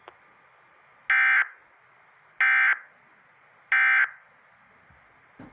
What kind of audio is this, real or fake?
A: real